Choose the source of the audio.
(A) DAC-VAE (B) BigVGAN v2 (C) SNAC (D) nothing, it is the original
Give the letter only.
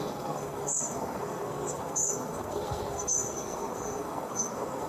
C